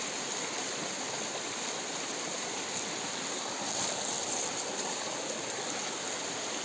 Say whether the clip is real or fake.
real